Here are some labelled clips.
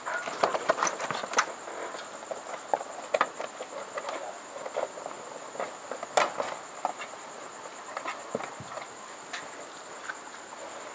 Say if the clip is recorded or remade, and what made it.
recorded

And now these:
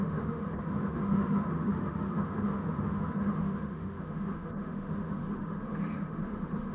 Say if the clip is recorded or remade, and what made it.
remade, autoencoder, DAC-VAE